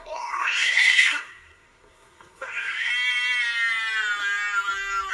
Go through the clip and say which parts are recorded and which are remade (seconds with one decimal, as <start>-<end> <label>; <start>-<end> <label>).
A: 0.0-2.9 remade; 2.9-5.1 recorded